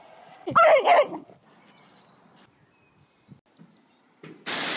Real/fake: real